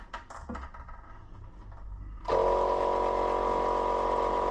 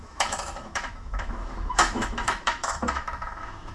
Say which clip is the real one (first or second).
first